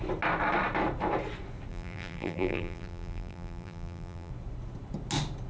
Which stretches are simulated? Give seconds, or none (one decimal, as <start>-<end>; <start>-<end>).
1.7-4.3